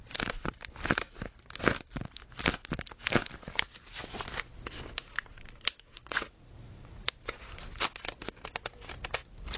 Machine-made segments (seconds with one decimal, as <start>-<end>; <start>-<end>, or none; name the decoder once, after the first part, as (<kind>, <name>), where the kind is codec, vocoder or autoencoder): 5.9-7.1 (vocoder, Vocos)